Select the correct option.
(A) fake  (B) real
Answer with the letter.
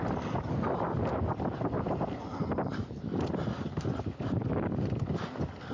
B